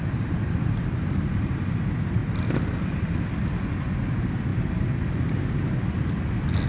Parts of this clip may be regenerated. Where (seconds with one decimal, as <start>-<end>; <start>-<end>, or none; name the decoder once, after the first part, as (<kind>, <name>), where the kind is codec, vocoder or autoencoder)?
none

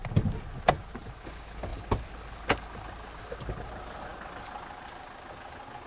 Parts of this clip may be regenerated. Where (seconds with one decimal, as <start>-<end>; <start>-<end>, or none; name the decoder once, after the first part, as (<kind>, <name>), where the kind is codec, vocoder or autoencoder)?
none

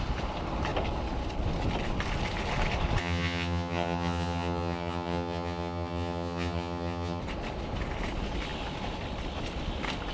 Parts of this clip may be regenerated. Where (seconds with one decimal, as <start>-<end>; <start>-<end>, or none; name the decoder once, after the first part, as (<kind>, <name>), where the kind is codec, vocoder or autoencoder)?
3.0-7.2 (vocoder, HiFi-GAN)

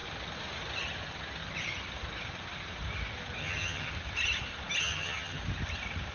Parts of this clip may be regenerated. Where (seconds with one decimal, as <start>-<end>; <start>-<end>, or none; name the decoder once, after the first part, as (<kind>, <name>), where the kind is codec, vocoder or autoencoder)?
3.4-3.9 (vocoder, HiFi-GAN); 4.8-5.4